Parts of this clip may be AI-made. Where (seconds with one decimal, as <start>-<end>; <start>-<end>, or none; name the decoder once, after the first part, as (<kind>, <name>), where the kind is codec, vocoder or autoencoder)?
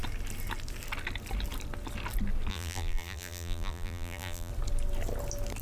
2.5-4.5 (vocoder, BigVGAN v2)